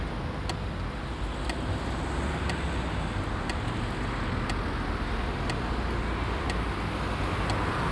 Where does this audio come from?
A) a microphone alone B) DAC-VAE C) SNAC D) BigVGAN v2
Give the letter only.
A